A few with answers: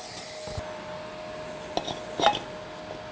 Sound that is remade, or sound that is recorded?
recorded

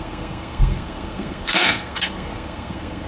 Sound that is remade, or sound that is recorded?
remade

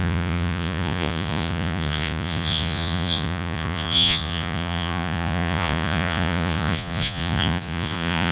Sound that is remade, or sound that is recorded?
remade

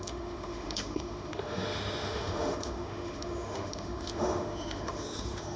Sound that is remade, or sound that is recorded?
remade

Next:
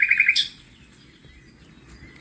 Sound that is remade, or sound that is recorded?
recorded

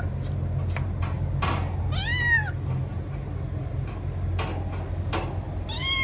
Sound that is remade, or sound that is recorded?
recorded